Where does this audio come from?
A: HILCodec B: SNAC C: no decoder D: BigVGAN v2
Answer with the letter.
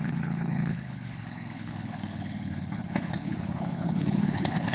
A